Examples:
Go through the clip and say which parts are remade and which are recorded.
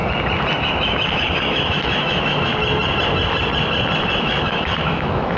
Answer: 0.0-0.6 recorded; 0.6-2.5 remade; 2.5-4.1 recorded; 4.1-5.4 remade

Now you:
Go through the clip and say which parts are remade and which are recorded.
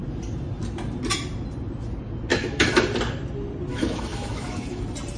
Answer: 0.0-2.3 recorded; 2.3-2.8 remade; 2.8-3.7 recorded; 3.7-4.8 remade; 4.8-5.2 recorded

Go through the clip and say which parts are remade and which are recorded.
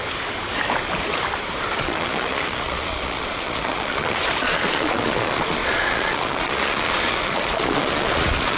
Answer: 0.0-1.8 recorded; 1.8-8.6 remade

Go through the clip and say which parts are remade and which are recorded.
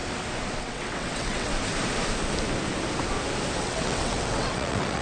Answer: 0.0-0.6 recorded; 0.6-1.5 remade; 1.5-3.6 recorded; 3.6-5.0 remade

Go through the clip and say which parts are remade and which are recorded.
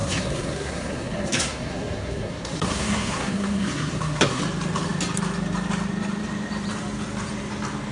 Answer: 0.0-4.4 remade; 4.4-7.9 recorded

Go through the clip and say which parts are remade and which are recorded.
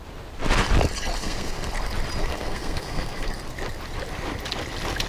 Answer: 0.0-1.2 recorded; 1.2-1.7 remade; 1.7-2.2 recorded; 2.2-3.3 remade; 3.3-5.1 recorded